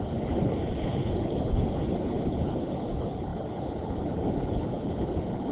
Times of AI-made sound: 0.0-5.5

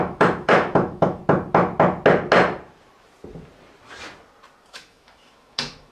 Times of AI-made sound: 0.0-1.2; 4.7-5.9

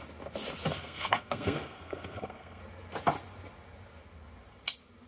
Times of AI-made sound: 0.7-2.6

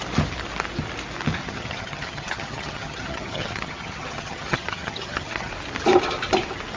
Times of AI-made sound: 1.4-5.5